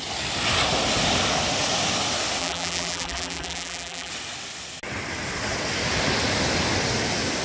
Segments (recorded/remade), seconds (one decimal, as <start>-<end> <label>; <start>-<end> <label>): 0.0-2.4 recorded; 2.4-4.1 remade; 4.1-7.4 recorded